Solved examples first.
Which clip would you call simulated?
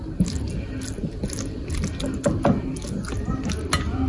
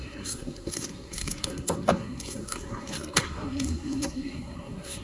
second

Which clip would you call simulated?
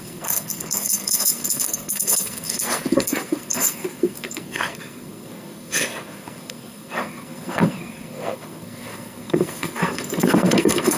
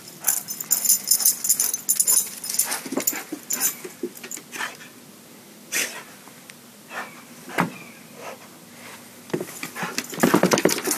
first